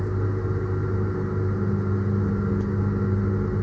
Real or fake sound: real